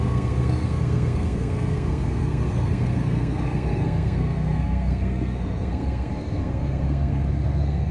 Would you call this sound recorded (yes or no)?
no